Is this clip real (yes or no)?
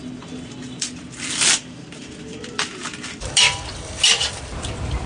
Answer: no